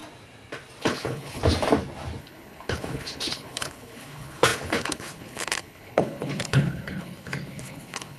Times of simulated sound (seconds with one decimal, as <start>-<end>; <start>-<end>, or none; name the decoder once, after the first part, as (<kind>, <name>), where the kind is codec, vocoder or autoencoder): 0.8-1.4 (codec, HILCodec); 2.2-8.2